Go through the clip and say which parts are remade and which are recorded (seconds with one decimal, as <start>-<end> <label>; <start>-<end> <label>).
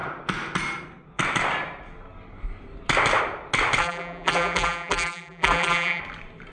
0.0-3.8 recorded; 3.8-6.0 remade; 6.0-6.5 recorded